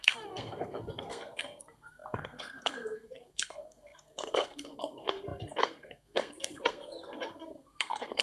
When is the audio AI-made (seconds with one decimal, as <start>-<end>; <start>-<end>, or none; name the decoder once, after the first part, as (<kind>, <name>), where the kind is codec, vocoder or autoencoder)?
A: 0.0-8.2 (codec, SNAC)